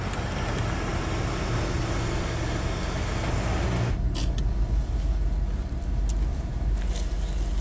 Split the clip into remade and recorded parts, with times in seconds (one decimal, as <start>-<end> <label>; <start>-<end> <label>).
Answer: 0.0-7.6 recorded